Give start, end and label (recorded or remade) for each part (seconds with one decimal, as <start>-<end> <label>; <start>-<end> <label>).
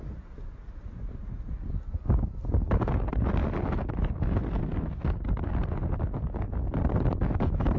0.0-7.8 recorded